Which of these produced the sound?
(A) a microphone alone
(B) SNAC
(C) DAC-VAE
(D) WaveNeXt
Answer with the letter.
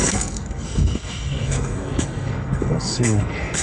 B